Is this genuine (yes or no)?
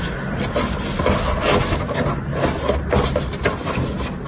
yes